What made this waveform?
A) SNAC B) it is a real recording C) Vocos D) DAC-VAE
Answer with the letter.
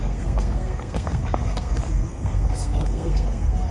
A